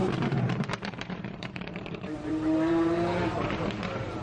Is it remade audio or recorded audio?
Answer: remade